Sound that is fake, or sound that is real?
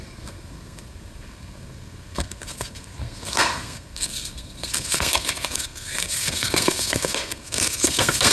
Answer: fake